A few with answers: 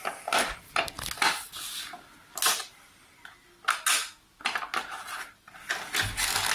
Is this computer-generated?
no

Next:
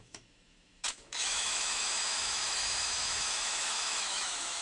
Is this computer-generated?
yes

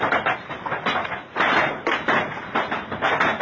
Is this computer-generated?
no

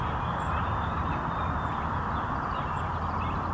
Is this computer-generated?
no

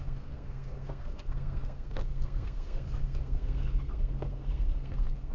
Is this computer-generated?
yes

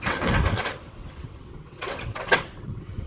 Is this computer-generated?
yes